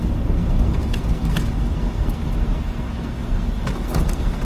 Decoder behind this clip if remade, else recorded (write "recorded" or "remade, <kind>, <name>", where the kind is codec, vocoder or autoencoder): remade, codec, SNAC